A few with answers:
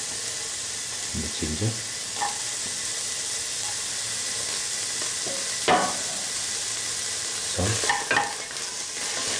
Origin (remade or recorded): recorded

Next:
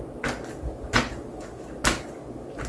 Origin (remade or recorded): recorded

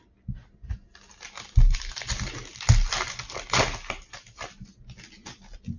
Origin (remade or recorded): recorded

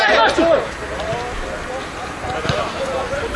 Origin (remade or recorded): recorded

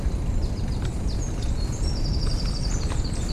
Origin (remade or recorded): recorded